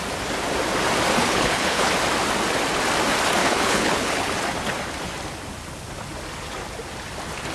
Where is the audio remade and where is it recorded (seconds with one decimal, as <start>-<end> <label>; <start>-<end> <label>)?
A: 0.0-1.2 recorded; 1.2-1.9 remade; 1.9-3.4 recorded; 3.4-4.3 remade; 4.3-7.5 recorded